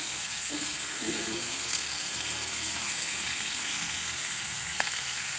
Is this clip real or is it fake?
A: fake